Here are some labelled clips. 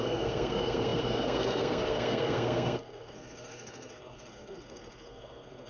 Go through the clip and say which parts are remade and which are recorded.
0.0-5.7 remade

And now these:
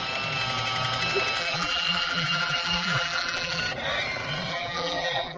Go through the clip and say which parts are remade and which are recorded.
0.0-1.4 recorded; 1.4-3.6 remade; 3.6-4.5 recorded; 4.5-5.4 remade

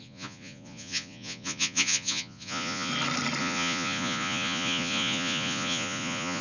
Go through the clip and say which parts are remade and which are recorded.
0.0-2.9 remade; 2.9-3.4 recorded; 3.4-6.4 remade

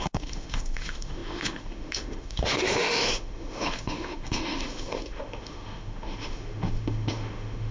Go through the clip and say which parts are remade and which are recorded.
0.0-7.7 remade